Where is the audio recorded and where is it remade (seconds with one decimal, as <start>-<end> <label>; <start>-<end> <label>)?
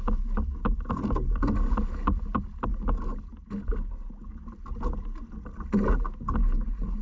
0.0-2.7 recorded; 2.7-3.9 remade; 3.9-7.0 recorded